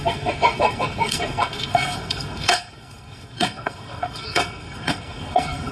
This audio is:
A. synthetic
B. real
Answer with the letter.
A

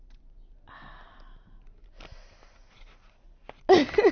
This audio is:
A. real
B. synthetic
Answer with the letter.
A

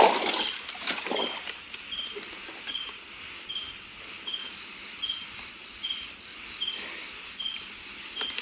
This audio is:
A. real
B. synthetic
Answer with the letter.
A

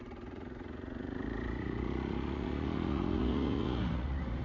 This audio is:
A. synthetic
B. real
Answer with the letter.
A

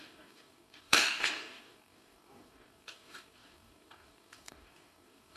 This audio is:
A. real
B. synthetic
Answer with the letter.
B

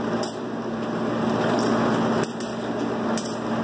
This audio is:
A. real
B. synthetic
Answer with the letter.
A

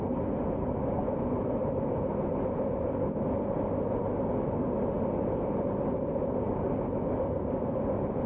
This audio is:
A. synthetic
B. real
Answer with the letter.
B